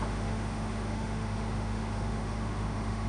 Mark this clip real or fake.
fake